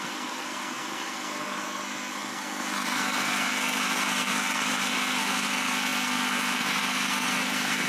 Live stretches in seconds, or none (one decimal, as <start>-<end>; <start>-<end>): none